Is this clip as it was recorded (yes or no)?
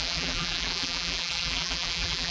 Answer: no